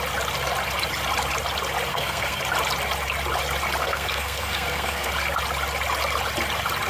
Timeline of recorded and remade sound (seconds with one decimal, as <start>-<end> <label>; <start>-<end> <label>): 0.0-1.9 recorded; 1.9-2.4 remade; 2.4-3.8 recorded; 3.8-5.1 remade; 5.1-6.9 recorded